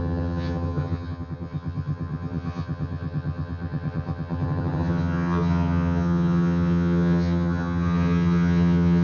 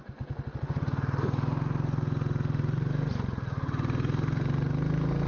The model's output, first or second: first